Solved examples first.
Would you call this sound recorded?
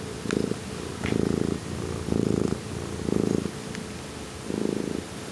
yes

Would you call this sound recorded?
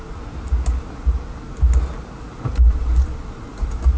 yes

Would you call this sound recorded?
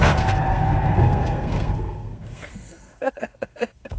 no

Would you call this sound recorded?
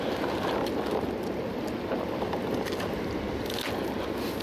yes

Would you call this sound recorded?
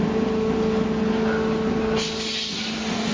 yes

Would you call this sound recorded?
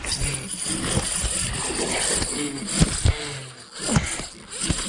yes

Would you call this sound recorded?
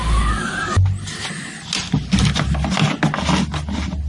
yes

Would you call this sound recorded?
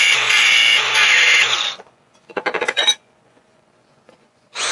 no